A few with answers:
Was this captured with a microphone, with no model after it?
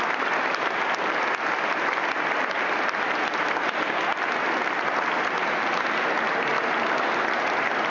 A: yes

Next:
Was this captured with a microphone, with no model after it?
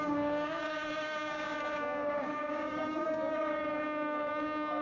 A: no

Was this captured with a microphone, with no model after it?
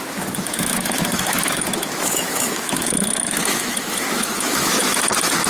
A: no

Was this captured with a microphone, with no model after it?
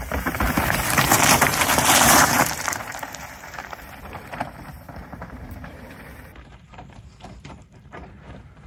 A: no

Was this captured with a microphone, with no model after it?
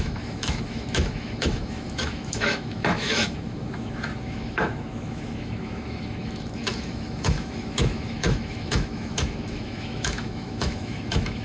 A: no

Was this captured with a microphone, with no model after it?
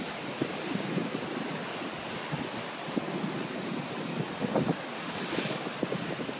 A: yes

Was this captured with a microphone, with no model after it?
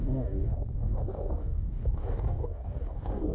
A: no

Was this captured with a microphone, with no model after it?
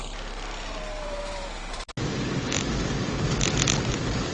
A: yes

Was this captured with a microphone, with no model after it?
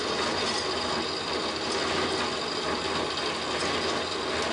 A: yes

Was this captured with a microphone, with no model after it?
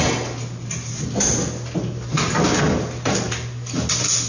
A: yes